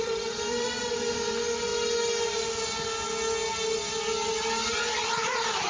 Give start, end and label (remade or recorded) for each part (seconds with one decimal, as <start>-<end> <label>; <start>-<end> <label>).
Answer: 0.0-1.7 remade; 1.7-5.1 recorded; 5.1-5.7 remade